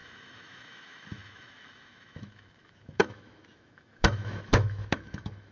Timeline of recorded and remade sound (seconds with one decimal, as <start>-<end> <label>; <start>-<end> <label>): 0.0-5.5 remade